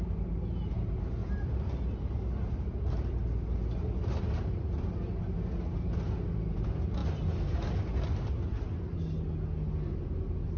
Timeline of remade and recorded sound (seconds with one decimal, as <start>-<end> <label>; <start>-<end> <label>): 0.0-1.2 recorded; 1.2-4.4 remade; 4.4-7.0 recorded; 7.0-8.3 remade; 8.3-10.6 recorded